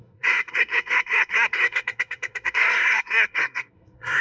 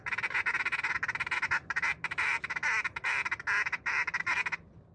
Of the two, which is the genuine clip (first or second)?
second